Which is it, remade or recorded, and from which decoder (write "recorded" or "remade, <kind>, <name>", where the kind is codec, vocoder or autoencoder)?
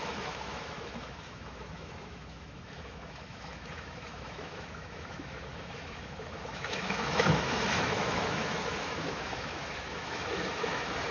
remade, autoencoder, DAC-VAE